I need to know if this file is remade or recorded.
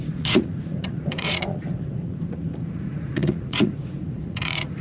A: remade